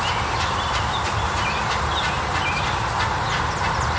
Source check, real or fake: real